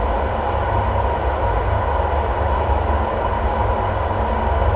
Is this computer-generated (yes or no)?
no